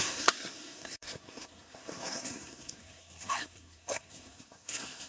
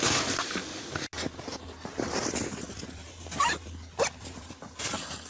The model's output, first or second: first